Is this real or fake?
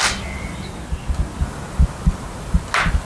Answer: real